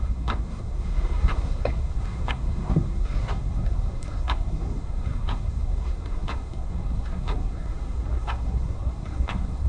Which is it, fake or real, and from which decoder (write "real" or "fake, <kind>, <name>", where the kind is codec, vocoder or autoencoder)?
fake, codec, SNAC